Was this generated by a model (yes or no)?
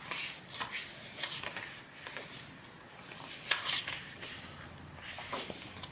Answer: no